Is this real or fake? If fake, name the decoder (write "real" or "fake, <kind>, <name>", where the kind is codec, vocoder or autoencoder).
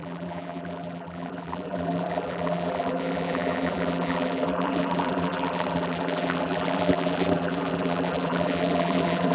fake, vocoder, BigVGAN v2